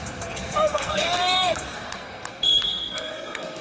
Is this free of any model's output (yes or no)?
no